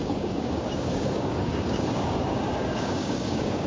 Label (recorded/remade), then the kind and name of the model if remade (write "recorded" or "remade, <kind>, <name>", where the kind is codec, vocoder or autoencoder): remade, codec, DAC